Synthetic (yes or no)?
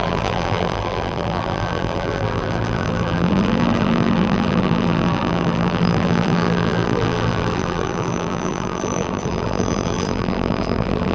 yes